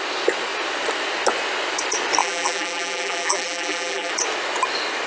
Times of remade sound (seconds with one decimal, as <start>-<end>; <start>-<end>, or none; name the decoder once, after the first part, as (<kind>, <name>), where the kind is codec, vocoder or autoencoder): 2.2-4.1 (vocoder, BigVGAN v2)